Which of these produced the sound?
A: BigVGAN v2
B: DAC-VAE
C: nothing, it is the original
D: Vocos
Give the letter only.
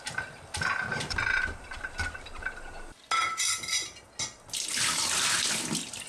C